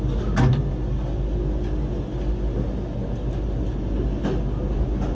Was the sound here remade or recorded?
recorded